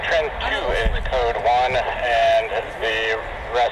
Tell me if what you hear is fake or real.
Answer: real